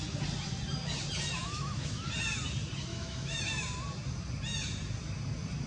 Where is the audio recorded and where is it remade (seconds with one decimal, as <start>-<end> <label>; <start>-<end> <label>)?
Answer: 0.0-1.4 recorded; 1.4-2.1 remade; 2.1-2.9 recorded; 2.9-3.4 remade; 3.4-5.7 recorded